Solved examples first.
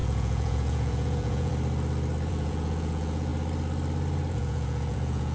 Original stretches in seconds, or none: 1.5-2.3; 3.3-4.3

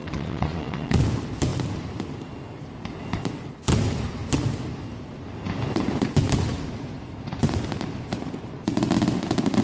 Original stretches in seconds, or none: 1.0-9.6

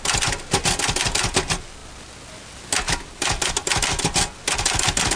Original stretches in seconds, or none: 0.0-5.2